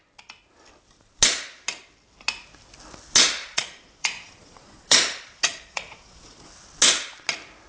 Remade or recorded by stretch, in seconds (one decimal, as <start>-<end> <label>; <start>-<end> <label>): 0.0-3.4 recorded; 3.4-6.5 remade; 6.5-7.7 recorded